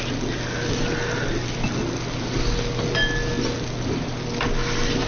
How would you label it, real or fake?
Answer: real